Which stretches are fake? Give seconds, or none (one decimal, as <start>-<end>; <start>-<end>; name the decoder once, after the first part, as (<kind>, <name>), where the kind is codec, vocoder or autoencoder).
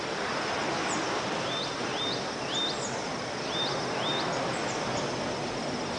none